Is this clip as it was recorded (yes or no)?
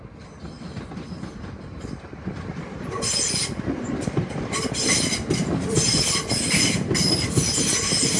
yes